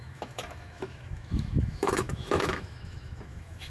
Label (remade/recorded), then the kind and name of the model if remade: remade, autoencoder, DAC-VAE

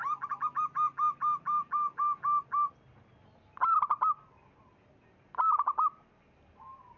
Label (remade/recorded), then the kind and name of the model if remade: recorded